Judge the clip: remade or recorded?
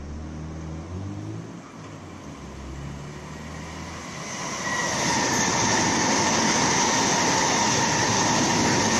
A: recorded